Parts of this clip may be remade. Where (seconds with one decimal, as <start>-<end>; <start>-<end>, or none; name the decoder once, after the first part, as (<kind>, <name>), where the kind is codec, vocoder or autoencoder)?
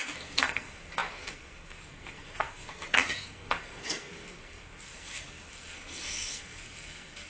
0.0-7.3 (codec, SNAC)